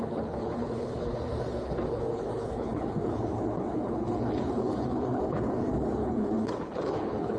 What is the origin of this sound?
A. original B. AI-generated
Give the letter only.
B